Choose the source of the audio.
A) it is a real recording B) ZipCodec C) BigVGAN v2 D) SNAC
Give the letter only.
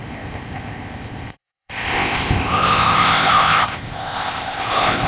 B